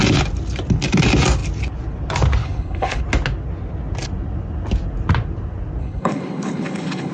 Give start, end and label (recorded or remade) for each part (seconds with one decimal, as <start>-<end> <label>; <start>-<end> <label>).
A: 0.0-2.4 recorded; 2.4-3.0 remade; 3.0-5.8 recorded; 5.8-7.1 remade

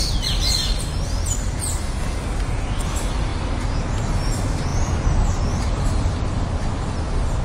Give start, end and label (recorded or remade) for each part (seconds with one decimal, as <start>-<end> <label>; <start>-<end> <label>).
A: 0.0-3.3 recorded; 3.3-3.8 remade; 3.8-4.7 recorded; 4.7-6.9 remade; 6.9-7.4 recorded

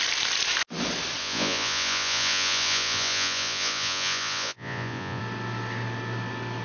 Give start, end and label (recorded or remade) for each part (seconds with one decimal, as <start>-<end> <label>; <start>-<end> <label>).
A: 0.0-1.2 recorded; 1.2-5.2 remade; 5.2-6.6 recorded

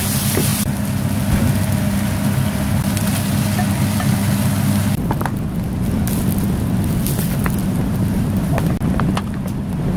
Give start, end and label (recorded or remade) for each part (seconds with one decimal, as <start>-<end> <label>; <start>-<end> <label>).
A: 0.0-10.0 recorded

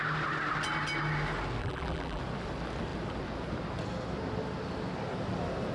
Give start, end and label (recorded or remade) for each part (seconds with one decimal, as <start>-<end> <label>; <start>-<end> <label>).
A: 0.0-1.6 recorded; 1.6-2.2 remade; 2.2-5.7 recorded

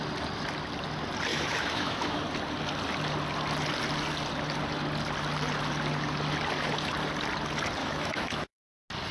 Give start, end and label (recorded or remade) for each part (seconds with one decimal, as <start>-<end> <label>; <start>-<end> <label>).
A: 0.0-1.3 recorded; 1.3-2.2 remade; 2.2-7.8 recorded; 7.8-8.7 remade; 8.7-9.1 recorded

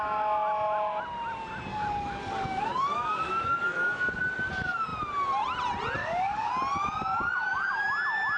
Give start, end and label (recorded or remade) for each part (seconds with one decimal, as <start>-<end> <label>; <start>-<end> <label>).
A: 0.0-1.7 recorded; 1.7-4.2 remade; 4.2-6.0 recorded; 6.0-6.5 remade; 6.5-8.4 recorded